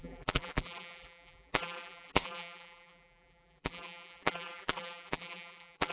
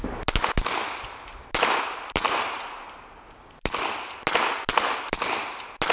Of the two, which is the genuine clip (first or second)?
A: second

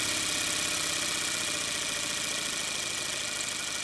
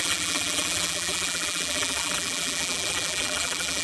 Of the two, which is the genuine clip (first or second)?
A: first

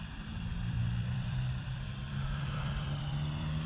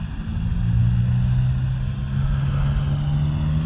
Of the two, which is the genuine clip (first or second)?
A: second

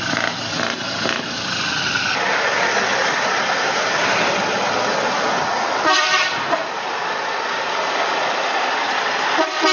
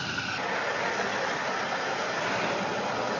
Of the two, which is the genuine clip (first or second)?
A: second